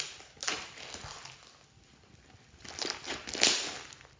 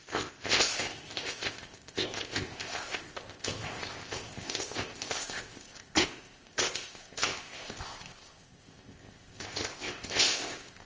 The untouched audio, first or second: first